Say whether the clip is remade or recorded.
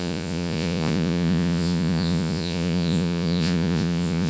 remade